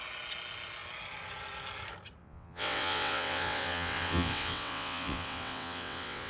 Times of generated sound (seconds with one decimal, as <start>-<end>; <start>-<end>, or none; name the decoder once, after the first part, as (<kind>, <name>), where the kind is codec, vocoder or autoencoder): 2.2-6.3 (vocoder, WaveNeXt)